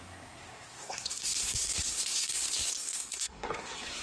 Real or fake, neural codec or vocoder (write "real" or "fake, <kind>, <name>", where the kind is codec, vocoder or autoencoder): fake, codec, SNAC